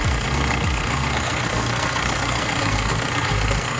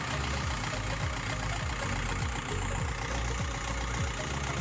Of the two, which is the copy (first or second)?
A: first